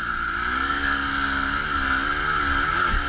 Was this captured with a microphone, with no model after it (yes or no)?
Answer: yes